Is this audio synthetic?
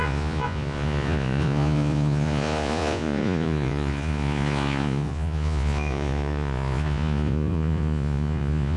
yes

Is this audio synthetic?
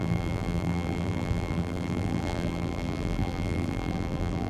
yes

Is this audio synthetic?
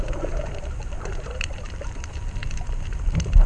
yes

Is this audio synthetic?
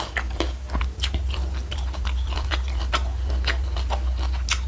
no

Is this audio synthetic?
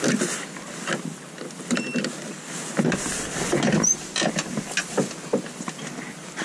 no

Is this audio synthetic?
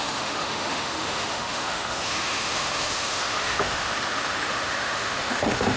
yes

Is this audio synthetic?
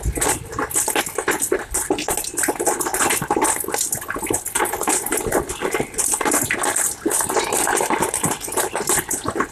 no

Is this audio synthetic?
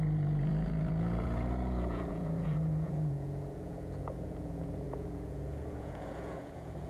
yes